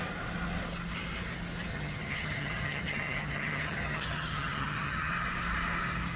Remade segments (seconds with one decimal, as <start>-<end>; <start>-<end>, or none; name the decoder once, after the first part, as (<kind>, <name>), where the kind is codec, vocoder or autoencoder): 1.7-5.1 (vocoder, HiFi-GAN)